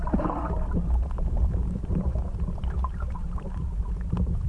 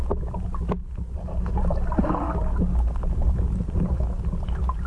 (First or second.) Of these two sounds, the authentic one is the second